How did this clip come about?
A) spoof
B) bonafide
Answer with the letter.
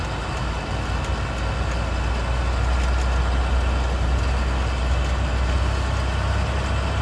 B